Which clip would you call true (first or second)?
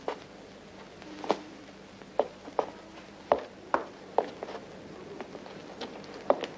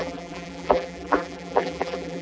first